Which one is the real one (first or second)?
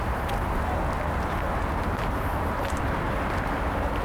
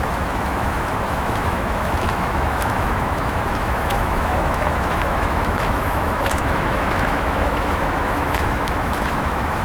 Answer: first